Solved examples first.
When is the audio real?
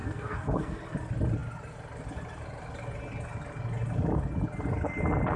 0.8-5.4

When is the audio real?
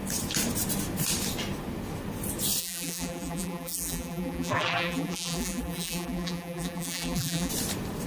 0.0-2.6; 7.5-8.1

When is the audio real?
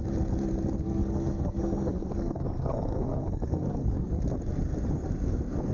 0.0-0.8; 4.2-5.7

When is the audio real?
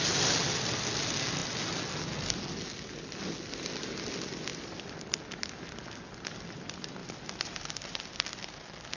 0.0-1.4; 2.0-4.5; 5.2-7.0; 8.5-9.0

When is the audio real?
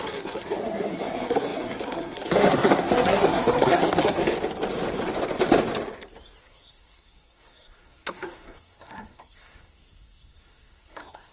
4.2-6.4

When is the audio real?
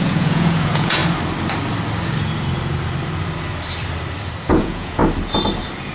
1.0-4.5; 5.0-5.9